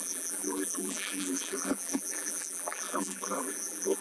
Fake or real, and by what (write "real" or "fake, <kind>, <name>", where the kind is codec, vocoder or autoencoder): fake, vocoder, BigVGAN v2